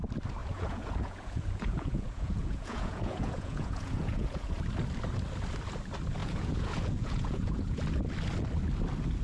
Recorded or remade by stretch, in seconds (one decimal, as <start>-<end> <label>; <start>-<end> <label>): 0.0-0.4 recorded; 0.4-4.5 remade; 4.5-6.2 recorded; 6.2-7.8 remade; 7.8-9.2 recorded